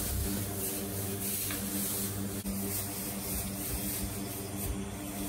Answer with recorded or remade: recorded